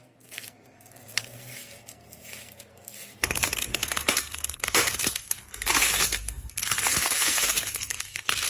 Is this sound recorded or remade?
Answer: remade